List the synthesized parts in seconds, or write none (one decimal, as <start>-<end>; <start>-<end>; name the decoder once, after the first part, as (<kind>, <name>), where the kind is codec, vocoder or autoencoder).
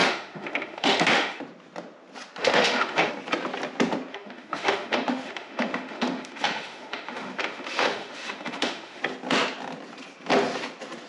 0.0-1.4 (autoencoder, DAC-VAE); 2.4-3.1; 4.1-9.0